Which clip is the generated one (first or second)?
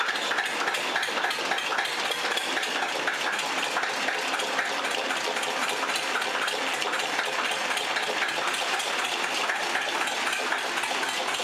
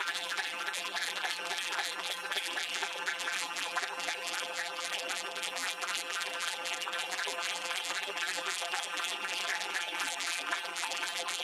second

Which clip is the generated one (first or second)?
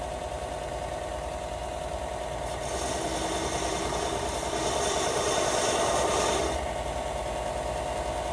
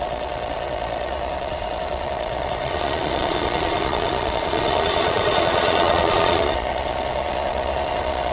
second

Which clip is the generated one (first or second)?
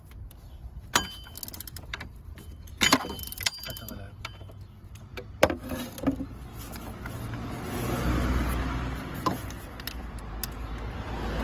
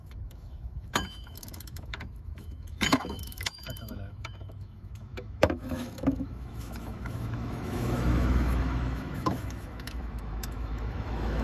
second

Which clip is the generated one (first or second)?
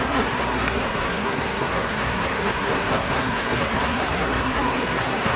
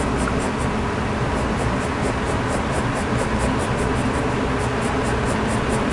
first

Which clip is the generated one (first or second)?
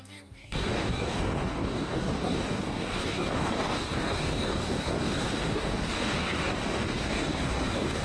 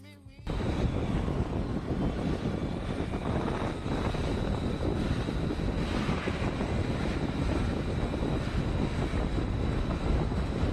first